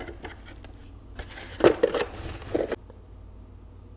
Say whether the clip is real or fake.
real